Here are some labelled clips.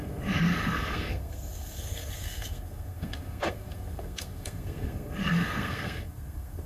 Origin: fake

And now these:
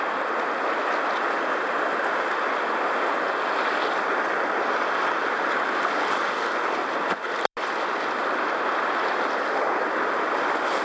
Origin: real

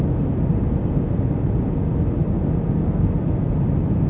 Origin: real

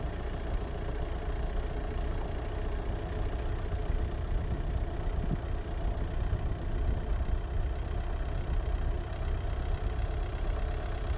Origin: real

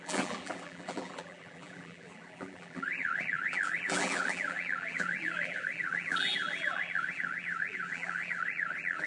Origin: fake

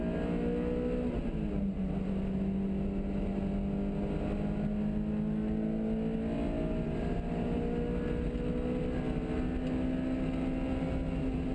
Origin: real